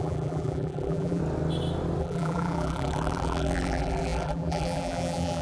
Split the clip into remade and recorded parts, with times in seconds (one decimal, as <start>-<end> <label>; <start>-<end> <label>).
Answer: 0.0-1.2 remade; 1.2-2.0 recorded; 2.0-5.4 remade